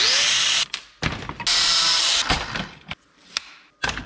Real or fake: real